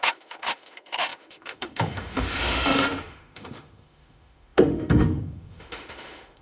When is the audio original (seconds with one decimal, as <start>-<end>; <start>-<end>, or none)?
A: none